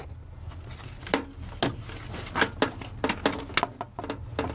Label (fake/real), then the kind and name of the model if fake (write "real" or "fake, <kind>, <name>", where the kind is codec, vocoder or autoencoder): real